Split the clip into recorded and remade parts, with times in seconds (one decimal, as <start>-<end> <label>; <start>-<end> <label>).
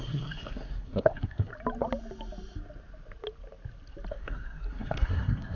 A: 0.0-1.5 remade; 1.5-4.1 recorded; 4.1-5.5 remade